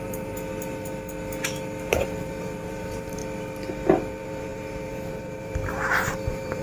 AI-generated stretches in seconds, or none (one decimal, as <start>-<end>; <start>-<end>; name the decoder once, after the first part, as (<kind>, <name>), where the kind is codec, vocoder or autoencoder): 0.0-0.5 (vocoder, BigVGAN v2); 1.9-3.2; 4.1-6.6